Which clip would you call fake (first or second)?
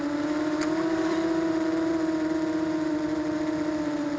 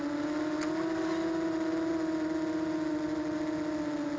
first